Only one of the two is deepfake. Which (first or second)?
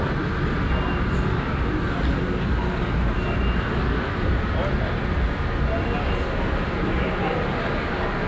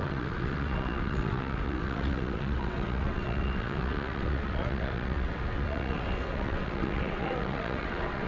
second